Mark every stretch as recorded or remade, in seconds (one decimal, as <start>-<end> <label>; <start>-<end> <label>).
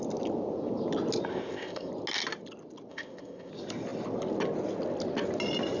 0.0-1.3 recorded; 1.3-1.9 remade; 1.9-2.9 recorded; 2.9-3.5 remade; 3.5-5.8 recorded